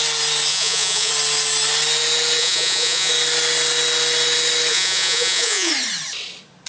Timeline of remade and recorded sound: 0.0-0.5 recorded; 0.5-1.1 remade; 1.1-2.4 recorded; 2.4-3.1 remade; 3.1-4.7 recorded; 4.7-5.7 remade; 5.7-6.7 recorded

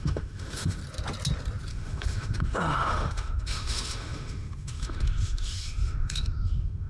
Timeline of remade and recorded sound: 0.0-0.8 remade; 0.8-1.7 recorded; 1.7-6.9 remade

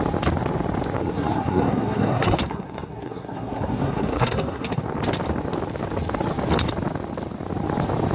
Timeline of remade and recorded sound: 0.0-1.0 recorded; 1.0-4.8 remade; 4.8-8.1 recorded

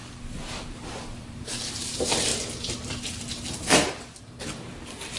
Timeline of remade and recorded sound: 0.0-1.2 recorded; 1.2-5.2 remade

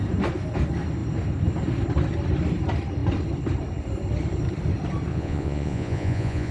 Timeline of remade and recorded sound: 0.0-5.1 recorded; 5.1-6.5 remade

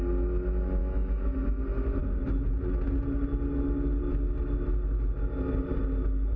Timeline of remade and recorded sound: 0.0-0.8 recorded; 0.8-1.6 remade; 1.6-6.4 recorded

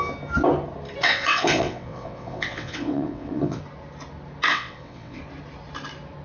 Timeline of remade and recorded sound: 0.0-1.0 recorded; 1.0-3.6 remade; 3.6-4.5 recorded; 4.5-5.2 remade; 5.2-6.2 recorded